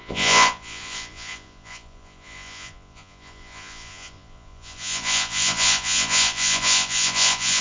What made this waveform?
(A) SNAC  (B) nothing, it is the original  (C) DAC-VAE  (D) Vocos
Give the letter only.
D